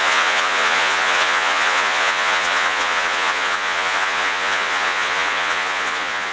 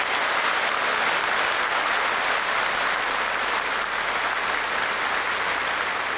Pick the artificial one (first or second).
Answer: first